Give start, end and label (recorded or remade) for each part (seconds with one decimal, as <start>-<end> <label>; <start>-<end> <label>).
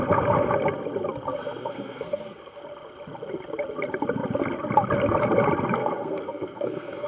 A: 0.0-1.6 recorded; 1.6-2.6 remade; 2.6-5.8 recorded; 5.8-7.1 remade